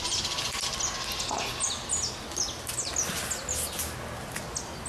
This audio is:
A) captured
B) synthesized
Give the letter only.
A